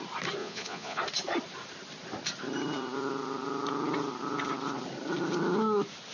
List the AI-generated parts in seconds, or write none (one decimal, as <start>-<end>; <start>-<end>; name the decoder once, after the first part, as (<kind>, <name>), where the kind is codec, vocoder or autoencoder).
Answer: 0.4-1.0 (vocoder, Vocos)